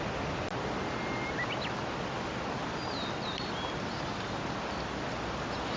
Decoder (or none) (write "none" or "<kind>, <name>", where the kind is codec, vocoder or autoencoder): none